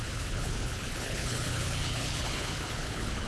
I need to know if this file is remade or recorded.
remade